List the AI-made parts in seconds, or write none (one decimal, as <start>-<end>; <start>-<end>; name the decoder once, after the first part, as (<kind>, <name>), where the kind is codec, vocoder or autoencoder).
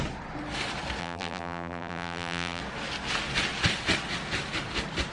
1.0-2.6 (vocoder, BigVGAN v2)